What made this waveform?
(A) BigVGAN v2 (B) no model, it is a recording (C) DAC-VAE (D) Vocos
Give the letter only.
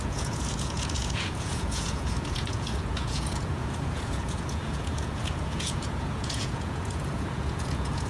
D